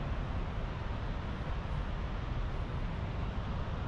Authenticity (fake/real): real